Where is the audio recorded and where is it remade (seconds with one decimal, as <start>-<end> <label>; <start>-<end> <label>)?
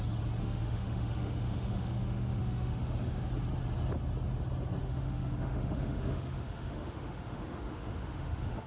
0.0-0.4 recorded; 0.4-3.3 remade; 3.3-4.8 recorded; 4.8-8.7 remade